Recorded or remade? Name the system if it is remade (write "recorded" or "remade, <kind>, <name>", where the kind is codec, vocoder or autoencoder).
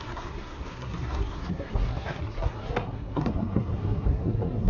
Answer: remade, codec, SNAC